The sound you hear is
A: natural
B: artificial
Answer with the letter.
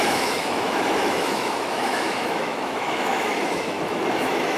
B